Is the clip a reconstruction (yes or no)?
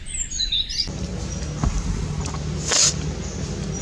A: no